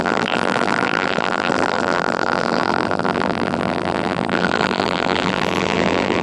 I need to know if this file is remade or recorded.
remade